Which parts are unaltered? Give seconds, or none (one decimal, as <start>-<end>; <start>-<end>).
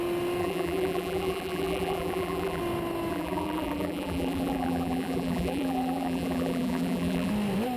0.0-0.4; 2.6-3.1; 7.3-7.8